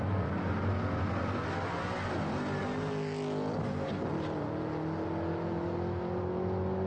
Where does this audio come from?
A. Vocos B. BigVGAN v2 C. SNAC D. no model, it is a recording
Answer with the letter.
D